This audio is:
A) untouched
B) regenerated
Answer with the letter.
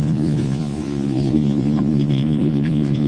B